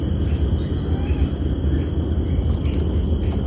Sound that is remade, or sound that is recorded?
recorded